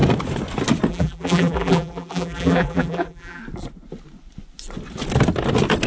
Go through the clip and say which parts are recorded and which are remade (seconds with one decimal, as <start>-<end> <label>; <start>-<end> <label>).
0.0-0.9 recorded; 0.9-3.4 remade; 3.4-5.9 recorded